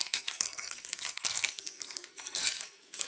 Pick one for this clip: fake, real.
fake